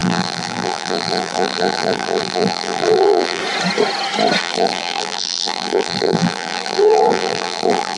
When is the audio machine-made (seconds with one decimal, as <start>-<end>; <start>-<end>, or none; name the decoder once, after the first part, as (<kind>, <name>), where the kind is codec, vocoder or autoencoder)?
0.0-3.4 (vocoder, BigVGAN v2); 4.4-8.0

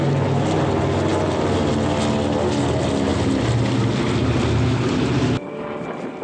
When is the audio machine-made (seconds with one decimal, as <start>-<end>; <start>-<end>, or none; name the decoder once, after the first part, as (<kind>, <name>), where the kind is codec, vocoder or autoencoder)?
none

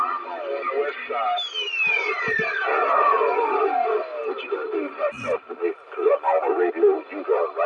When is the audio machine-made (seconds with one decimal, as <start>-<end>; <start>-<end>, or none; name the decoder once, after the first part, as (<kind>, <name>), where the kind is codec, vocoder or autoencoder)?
none

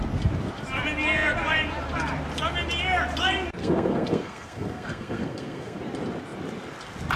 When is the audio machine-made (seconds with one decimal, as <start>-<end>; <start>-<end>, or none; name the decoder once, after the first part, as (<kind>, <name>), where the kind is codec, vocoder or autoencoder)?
3.6-5.8 (codec, SNAC)